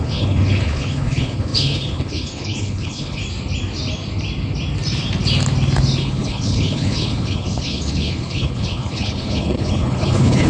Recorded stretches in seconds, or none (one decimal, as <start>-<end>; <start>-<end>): 3.2-6.0